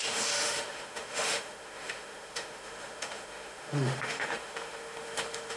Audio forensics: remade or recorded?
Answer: remade